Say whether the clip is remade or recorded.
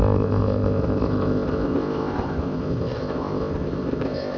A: remade